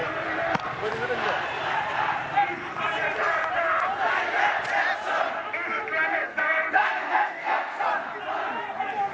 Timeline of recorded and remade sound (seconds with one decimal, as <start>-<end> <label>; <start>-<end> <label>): 0.0-6.2 recorded; 6.2-7.8 remade; 7.8-9.1 recorded